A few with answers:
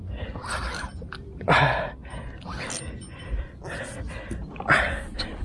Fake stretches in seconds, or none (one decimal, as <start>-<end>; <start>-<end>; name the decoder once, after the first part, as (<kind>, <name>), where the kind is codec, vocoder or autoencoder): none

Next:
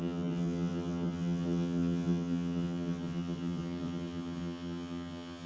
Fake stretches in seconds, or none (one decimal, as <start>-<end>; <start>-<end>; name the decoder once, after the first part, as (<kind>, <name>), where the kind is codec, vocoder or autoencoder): 0.0-5.5 (vocoder, HiFi-GAN)

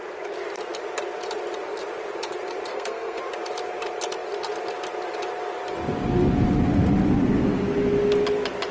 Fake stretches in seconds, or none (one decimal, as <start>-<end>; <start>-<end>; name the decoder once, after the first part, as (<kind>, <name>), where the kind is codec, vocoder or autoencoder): 2.7-3.2 (codec, SNAC)